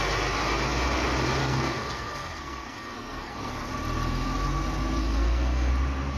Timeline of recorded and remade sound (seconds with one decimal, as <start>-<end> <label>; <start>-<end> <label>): 0.0-1.4 recorded; 1.4-3.7 remade; 3.7-5.0 recorded; 5.0-5.7 remade; 5.7-6.2 recorded

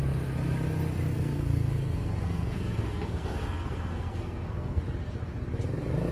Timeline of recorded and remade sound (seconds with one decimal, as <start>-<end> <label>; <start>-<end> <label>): 0.0-1.1 recorded; 1.1-4.8 remade; 4.8-6.1 recorded

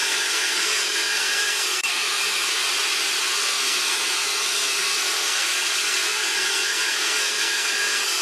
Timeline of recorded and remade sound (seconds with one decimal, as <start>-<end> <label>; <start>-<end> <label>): 0.0-2.6 remade; 2.6-3.2 recorded; 3.2-8.2 remade

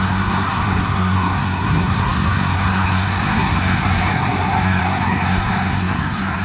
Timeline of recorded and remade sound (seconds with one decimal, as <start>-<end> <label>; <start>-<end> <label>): 0.0-6.4 remade

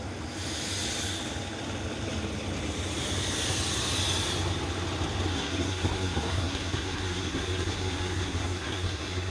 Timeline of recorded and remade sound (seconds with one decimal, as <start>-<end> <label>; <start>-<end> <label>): 0.0-5.3 recorded; 5.3-9.3 remade

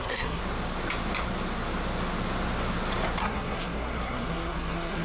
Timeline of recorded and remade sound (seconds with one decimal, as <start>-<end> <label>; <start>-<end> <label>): 0.0-0.4 remade; 0.4-3.2 recorded; 3.2-5.0 remade